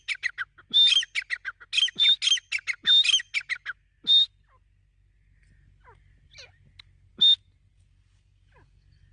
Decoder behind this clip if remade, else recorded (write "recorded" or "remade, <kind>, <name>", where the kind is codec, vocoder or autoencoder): recorded